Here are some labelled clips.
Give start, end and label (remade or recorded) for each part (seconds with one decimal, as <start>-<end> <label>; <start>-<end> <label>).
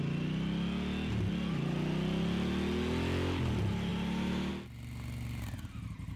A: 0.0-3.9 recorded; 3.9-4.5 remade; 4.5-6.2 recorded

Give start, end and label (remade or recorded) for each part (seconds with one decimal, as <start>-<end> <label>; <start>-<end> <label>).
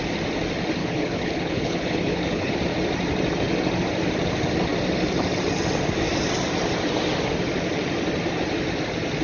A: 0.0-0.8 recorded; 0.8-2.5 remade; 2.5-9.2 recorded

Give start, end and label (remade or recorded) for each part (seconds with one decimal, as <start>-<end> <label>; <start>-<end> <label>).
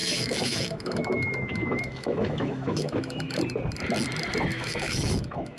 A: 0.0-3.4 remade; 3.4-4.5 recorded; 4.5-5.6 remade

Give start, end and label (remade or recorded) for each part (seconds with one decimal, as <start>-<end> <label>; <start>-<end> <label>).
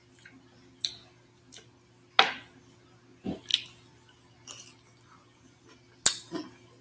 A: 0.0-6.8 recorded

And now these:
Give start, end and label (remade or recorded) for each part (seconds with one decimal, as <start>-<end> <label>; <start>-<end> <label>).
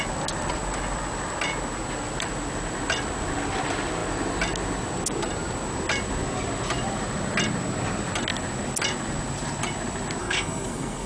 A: 0.0-10.2 recorded; 10.2-11.1 remade